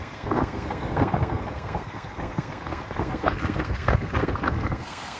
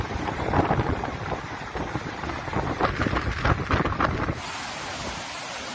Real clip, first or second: second